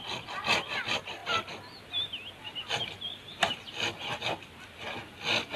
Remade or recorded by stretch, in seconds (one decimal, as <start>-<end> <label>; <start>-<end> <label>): 0.0-5.6 recorded